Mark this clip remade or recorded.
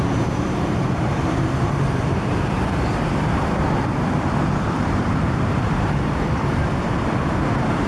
remade